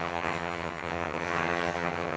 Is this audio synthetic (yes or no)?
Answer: yes